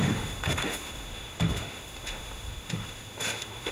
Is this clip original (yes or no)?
no